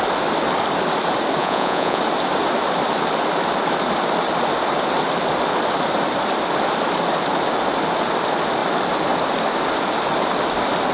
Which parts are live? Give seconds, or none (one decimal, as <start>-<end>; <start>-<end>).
0.0-1.4; 2.0-10.9